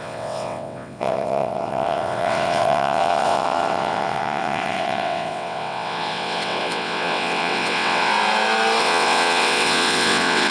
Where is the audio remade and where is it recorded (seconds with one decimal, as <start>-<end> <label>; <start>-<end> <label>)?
0.0-8.1 remade; 8.1-8.8 recorded; 8.8-10.5 remade